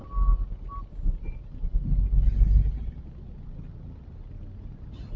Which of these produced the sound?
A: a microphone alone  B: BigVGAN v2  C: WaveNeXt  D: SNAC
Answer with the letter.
A